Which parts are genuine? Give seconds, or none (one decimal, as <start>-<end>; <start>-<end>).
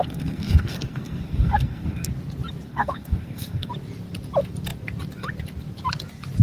2.1-2.7; 3.7-6.4